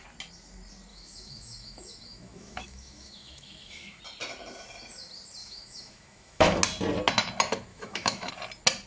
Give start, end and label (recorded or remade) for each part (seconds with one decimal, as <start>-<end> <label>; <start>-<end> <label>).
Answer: 0.0-0.9 recorded; 0.9-4.0 remade; 4.0-5.4 recorded; 5.4-6.6 remade; 6.6-7.7 recorded; 7.7-8.3 remade; 8.3-8.9 recorded

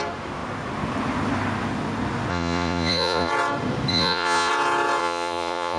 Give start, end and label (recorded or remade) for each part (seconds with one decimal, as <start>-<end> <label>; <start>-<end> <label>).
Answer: 0.0-2.3 recorded; 2.3-3.3 remade; 3.3-3.9 recorded; 3.9-4.5 remade; 4.5-5.0 recorded; 5.0-5.8 remade